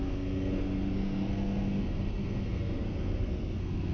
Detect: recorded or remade remade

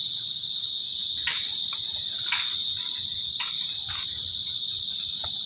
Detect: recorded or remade recorded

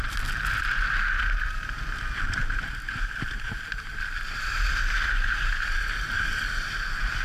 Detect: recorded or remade recorded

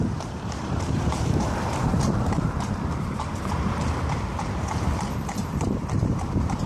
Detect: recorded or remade remade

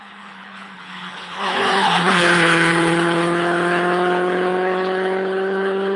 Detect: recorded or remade remade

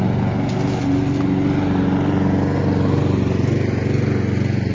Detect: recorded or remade recorded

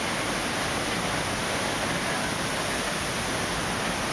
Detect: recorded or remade recorded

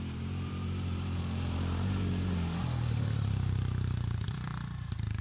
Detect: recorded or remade remade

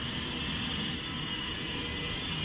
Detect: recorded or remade recorded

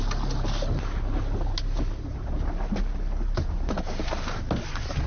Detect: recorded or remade recorded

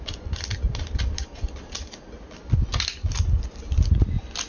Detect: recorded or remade recorded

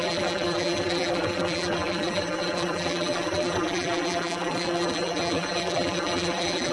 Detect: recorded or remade remade